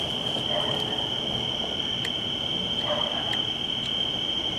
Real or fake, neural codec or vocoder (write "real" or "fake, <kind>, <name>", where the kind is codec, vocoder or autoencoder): real